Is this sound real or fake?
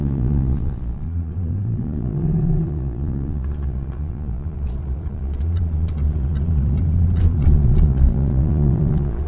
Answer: fake